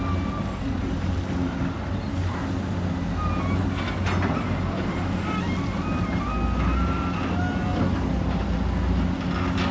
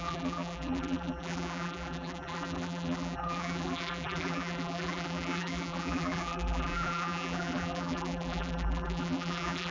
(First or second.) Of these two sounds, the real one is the first